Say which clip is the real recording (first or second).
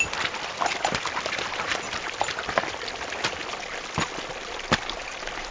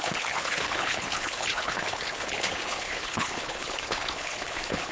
first